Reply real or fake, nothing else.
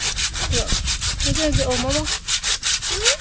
real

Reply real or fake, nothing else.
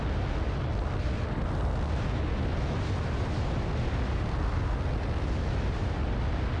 real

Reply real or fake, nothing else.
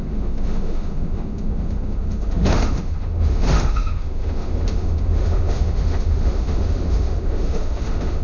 fake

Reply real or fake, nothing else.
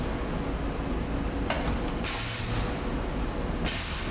real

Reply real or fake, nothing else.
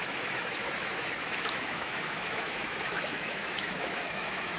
fake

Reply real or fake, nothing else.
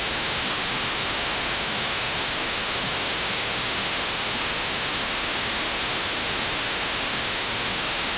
fake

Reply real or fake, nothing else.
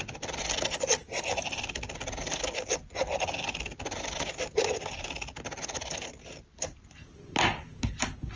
real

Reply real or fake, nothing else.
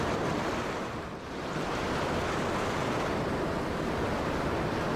real